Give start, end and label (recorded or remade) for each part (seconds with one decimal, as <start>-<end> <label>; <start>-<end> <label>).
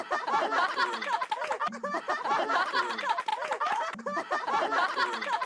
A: 0.0-5.5 recorded